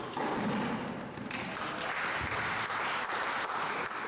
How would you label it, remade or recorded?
recorded